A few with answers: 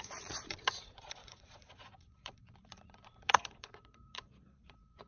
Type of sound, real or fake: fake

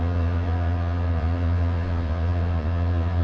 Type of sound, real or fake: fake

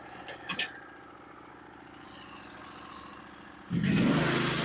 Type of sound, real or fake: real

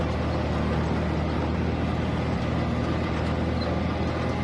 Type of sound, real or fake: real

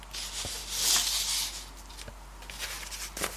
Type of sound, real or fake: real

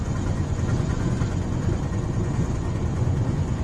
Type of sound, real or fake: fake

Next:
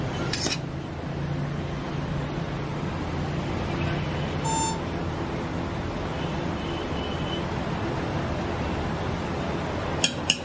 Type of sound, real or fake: real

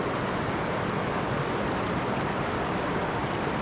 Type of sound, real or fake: real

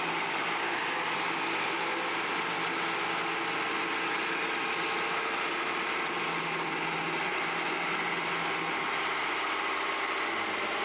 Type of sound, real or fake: real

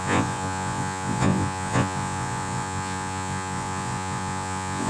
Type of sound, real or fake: fake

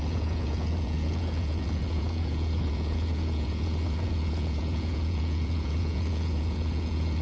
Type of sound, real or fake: fake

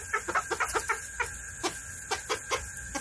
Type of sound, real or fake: real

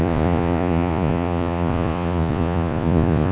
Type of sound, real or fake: fake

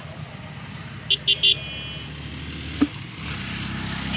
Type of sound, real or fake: real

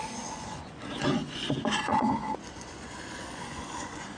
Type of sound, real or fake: fake